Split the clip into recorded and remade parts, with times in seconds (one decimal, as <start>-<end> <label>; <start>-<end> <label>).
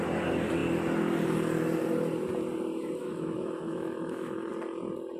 0.0-3.0 recorded; 3.0-4.5 remade; 4.5-5.2 recorded